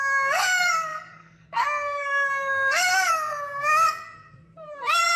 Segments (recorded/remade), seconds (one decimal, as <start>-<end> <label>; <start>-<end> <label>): 0.0-5.2 remade